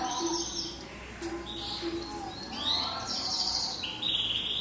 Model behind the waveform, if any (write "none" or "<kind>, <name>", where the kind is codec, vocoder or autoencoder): none